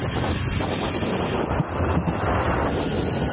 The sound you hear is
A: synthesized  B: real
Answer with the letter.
B